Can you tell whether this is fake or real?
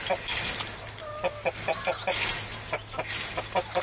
real